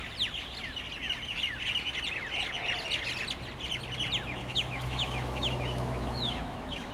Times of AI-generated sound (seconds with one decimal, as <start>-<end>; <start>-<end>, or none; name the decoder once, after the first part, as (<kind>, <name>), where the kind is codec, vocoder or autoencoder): 4.4-6.9 (autoencoder, DAC-VAE)